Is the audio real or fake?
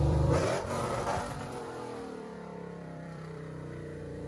fake